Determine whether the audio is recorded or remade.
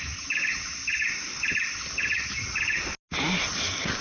recorded